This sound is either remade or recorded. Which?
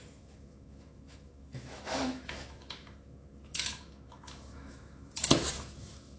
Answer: remade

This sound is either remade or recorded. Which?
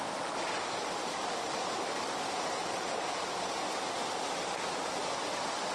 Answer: recorded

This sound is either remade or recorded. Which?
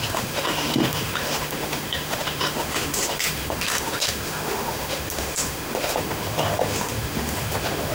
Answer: remade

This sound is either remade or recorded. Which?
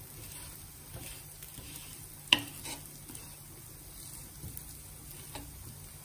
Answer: recorded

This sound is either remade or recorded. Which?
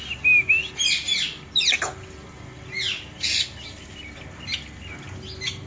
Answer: recorded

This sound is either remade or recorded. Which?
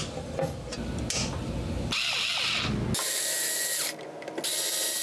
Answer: recorded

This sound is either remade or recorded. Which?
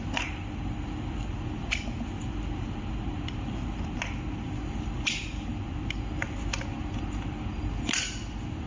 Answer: recorded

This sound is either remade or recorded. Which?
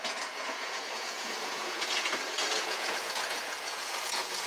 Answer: remade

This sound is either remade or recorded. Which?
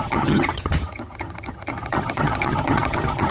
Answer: remade